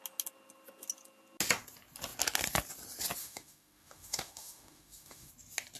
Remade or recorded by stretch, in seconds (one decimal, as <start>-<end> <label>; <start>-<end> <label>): 0.0-3.2 recorded; 3.2-5.3 remade; 5.3-5.8 recorded